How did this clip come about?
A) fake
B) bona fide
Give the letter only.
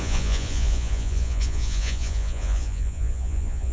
A